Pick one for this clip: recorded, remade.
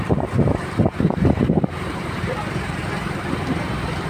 remade